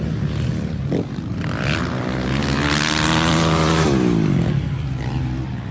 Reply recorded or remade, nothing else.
recorded